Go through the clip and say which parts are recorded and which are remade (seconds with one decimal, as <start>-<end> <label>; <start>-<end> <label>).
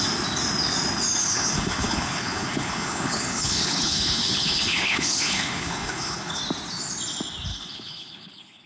0.0-1.2 recorded; 1.2-6.4 remade; 6.4-7.5 recorded; 7.5-8.7 remade